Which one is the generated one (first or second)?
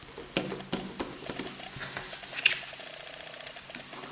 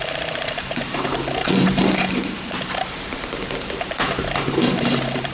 second